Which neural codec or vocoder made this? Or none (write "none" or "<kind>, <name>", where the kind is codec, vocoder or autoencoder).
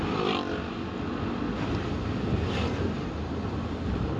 none